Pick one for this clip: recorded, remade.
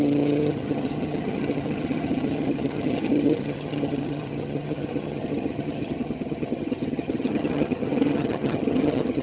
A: remade